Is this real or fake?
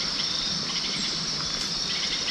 fake